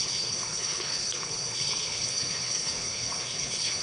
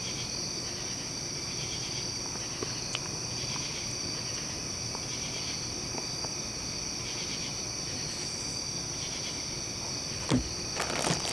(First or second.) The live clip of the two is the second